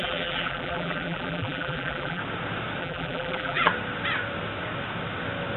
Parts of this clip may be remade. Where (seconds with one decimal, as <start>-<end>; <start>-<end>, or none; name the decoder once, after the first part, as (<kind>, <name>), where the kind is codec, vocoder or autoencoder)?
0.0-2.2 (vocoder, BigVGAN v2); 2.8-3.7